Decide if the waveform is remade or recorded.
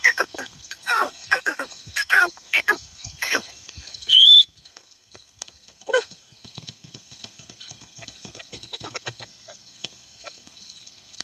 remade